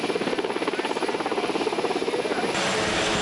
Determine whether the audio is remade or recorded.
recorded